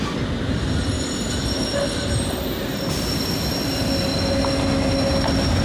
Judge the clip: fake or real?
real